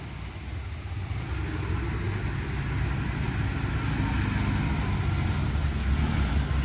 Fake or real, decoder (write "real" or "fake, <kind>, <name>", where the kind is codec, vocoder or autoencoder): real